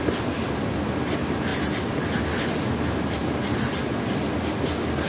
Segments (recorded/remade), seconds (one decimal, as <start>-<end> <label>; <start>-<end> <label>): 0.0-5.1 recorded